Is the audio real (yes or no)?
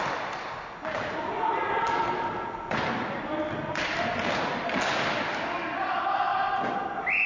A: yes